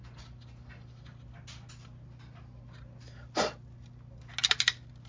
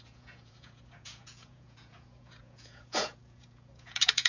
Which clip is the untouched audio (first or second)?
first